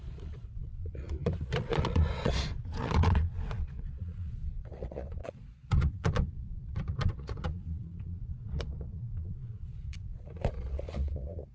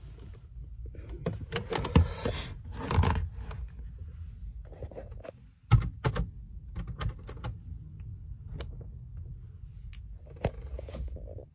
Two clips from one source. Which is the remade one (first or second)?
first